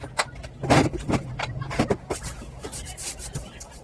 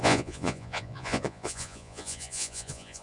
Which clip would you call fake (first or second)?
second